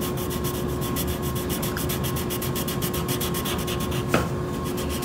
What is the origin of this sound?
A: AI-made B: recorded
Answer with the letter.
B